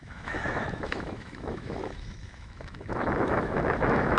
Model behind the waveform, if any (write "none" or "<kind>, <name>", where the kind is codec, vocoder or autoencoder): autoencoder, DAC-VAE